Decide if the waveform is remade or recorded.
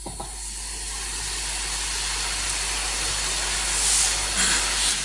recorded